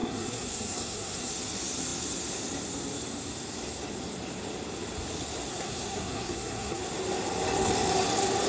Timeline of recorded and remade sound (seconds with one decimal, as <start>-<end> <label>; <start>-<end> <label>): 0.0-1.3 remade; 1.3-5.5 recorded; 5.5-6.8 remade; 6.8-8.5 recorded